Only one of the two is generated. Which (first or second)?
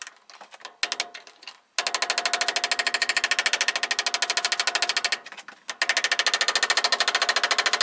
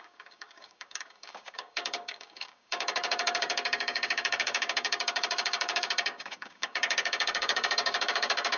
second